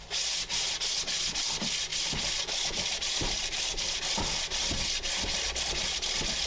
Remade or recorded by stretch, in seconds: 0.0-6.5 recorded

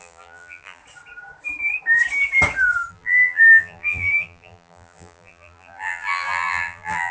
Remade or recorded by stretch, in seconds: 0.0-0.8 remade; 0.8-2.9 recorded; 2.9-7.1 remade

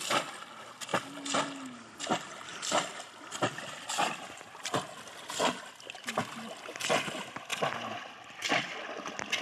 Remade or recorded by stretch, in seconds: 0.0-0.9 recorded; 0.9-1.4 remade; 1.4-2.5 recorded; 2.5-6.3 remade; 6.3-9.4 recorded

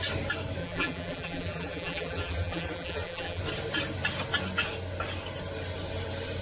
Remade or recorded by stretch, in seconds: 0.0-0.6 recorded; 0.6-3.4 remade; 3.4-6.4 recorded

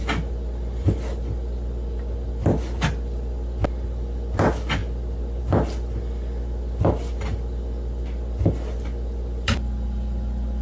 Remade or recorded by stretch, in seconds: 0.0-10.6 recorded

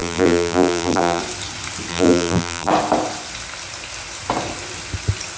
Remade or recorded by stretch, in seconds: 0.0-1.2 remade; 1.2-1.9 recorded; 1.9-2.7 remade; 2.7-5.4 recorded